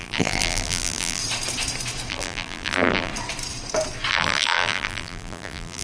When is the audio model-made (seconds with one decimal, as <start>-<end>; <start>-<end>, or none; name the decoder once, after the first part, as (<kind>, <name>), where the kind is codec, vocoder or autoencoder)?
0.0-1.2 (vocoder, BigVGAN v2); 2.1-3.1; 4.1-5.8